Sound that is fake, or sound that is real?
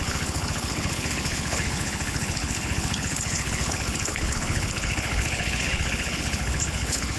fake